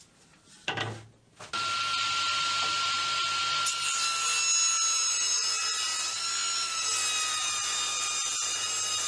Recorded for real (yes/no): yes